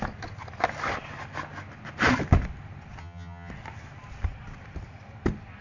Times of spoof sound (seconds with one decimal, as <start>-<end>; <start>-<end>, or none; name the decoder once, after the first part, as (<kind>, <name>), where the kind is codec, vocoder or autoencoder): 3.0-3.5 (vocoder, HiFi-GAN)